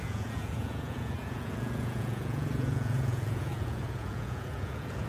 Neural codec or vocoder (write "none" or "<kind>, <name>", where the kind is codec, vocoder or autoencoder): vocoder, Vocos